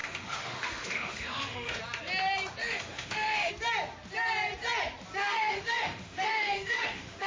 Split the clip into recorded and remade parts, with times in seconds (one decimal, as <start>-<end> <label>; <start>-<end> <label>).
0.0-1.8 remade; 1.8-2.6 recorded; 2.6-3.5 remade; 3.5-5.2 recorded; 5.2-7.3 remade